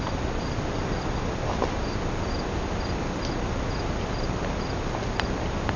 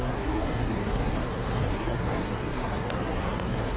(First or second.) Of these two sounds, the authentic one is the first